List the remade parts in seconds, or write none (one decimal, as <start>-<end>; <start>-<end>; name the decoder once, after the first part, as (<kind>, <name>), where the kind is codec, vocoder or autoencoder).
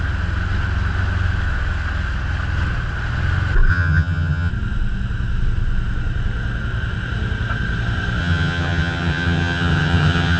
3.7-4.5 (vocoder, HiFi-GAN); 8.2-10.4